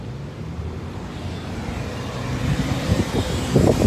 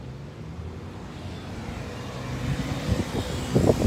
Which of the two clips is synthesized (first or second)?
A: first